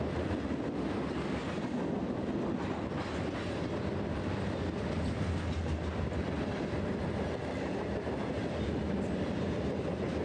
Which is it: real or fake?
real